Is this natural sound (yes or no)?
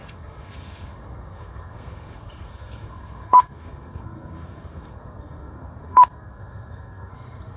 no